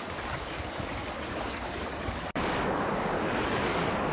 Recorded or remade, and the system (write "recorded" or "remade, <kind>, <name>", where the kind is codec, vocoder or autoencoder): remade, codec, DAC